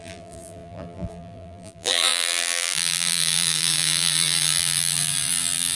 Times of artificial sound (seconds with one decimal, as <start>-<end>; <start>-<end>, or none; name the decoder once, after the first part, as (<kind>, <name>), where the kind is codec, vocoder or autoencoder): 0.0-5.8 (vocoder, BigVGAN v2)